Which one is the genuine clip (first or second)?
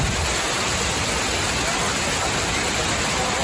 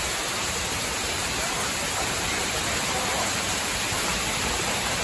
first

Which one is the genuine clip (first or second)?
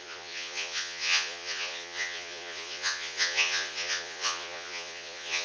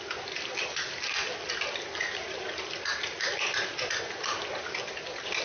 second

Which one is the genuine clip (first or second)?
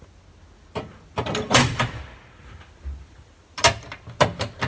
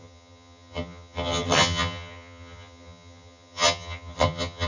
first